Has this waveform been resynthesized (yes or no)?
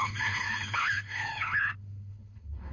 yes